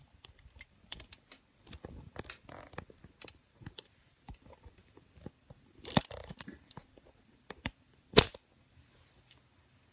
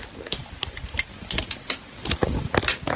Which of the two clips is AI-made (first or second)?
first